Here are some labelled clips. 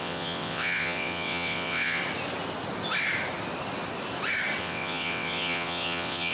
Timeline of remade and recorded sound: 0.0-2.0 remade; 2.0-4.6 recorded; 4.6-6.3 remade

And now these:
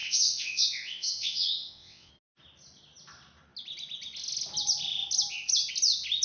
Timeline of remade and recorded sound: 0.0-2.1 remade; 2.1-6.2 recorded

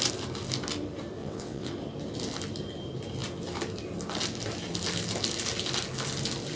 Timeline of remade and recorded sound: 0.0-1.2 recorded; 1.2-1.7 remade; 1.7-6.6 recorded

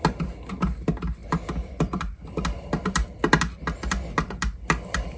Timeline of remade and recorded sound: 0.0-5.2 recorded